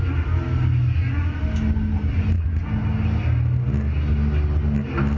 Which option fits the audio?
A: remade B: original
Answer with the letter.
B